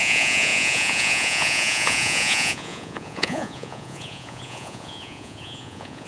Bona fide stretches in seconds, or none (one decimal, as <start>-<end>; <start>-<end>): none